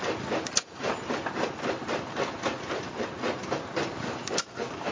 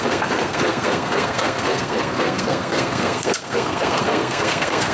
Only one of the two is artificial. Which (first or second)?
second